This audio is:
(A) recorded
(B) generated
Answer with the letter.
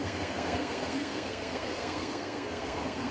B